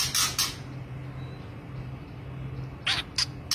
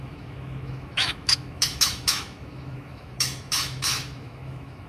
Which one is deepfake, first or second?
second